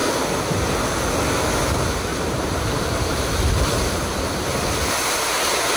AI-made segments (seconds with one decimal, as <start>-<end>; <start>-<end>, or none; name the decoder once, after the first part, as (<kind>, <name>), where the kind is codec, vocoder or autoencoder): 2.1-4.3 (vocoder, BigVGAN v2)